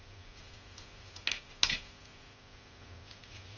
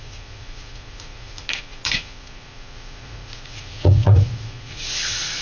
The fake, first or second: second